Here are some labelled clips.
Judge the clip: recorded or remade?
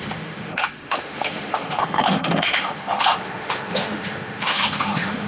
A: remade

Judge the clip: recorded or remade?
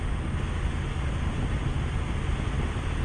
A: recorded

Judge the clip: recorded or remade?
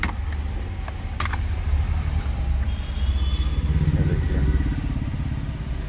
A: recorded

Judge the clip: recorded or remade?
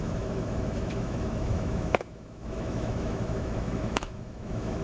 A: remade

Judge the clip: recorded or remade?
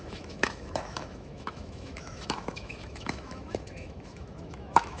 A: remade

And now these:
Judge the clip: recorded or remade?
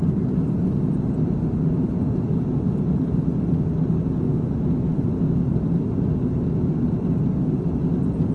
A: recorded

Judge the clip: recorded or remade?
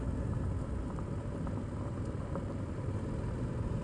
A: recorded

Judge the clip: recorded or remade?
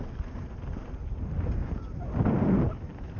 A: recorded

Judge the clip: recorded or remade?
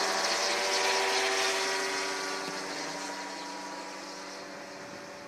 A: recorded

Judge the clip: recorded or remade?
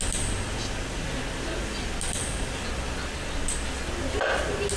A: recorded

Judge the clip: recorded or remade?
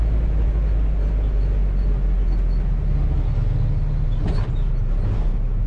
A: recorded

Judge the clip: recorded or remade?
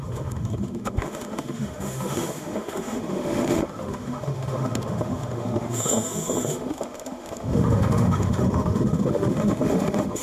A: remade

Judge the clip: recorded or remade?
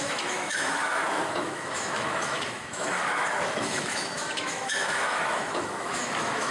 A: remade